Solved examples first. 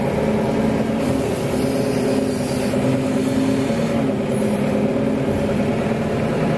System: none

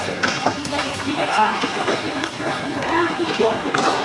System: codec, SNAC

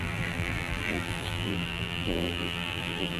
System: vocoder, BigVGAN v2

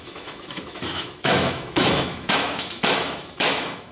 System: autoencoder, DAC-VAE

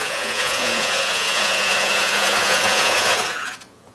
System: vocoder, Vocos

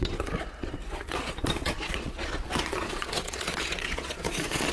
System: vocoder, Vocos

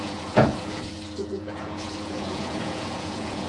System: vocoder, Vocos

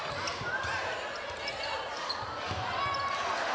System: none